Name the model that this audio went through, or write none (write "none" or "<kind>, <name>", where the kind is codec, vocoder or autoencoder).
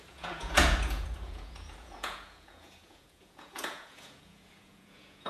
vocoder, Vocos